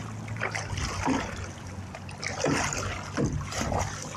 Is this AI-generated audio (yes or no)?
no